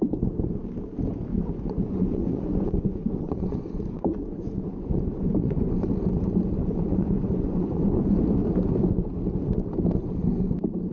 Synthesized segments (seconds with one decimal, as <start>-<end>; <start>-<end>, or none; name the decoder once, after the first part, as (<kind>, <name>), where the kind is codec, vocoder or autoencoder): 1.3-5.7 (vocoder, Vocos); 6.6-8.2